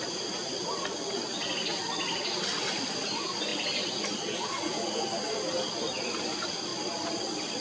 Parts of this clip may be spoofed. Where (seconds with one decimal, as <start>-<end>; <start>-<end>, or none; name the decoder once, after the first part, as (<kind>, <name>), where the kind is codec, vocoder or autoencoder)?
none